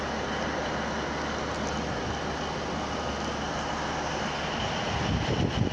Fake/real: real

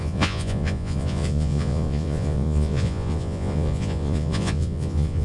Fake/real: fake